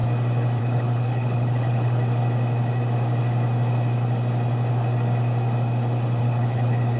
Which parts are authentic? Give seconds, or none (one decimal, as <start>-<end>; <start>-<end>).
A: 0.0-0.6; 2.0-6.2